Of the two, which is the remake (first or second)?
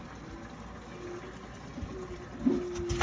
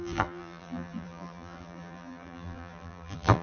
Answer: second